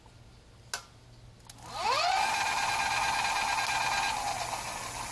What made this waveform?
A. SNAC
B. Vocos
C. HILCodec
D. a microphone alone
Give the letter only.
D